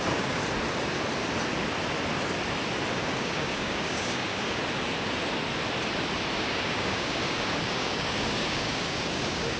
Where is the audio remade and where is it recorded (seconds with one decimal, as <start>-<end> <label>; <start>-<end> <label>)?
0.0-0.4 remade; 0.4-2.9 recorded; 2.9-4.6 remade; 4.6-6.4 recorded; 6.4-9.6 remade

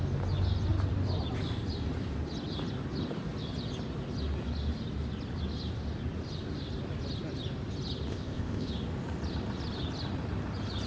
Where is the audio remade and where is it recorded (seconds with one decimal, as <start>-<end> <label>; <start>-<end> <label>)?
0.0-8.1 recorded; 8.1-8.7 remade; 8.7-10.9 recorded